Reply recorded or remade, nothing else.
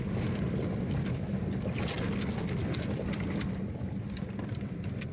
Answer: recorded